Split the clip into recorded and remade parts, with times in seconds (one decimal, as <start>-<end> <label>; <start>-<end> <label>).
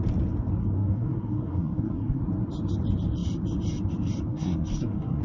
0.0-0.6 recorded; 0.6-2.2 remade; 2.2-4.3 recorded; 4.3-5.2 remade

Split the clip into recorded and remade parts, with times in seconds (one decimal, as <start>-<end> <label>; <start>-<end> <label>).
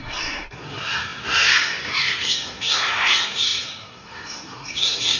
0.0-5.2 remade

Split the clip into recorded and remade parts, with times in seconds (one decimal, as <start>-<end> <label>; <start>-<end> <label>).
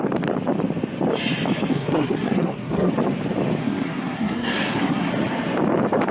0.0-1.7 recorded; 1.7-2.9 remade; 2.9-3.6 recorded; 3.6-5.1 remade; 5.1-6.1 recorded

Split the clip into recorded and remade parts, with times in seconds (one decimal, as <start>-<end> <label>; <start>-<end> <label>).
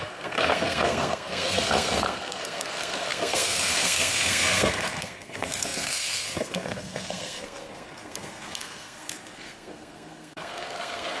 0.0-11.2 remade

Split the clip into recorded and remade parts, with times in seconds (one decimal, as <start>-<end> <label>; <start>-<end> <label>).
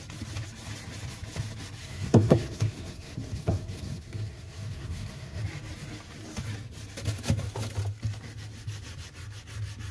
0.0-1.8 recorded; 1.8-5.4 remade; 5.4-9.9 recorded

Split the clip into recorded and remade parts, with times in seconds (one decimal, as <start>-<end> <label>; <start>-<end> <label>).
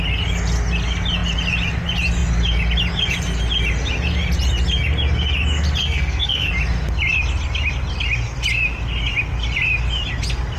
0.0-5.8 recorded; 5.8-6.5 remade; 6.5-10.6 recorded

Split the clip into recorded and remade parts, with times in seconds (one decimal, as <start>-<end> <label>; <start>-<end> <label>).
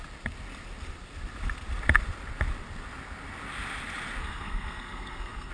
0.0-4.2 recorded; 4.2-5.5 remade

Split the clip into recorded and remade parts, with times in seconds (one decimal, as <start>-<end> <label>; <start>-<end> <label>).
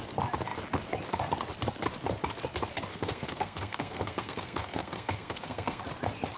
0.0-2.9 recorded; 2.9-5.8 remade; 5.8-6.4 recorded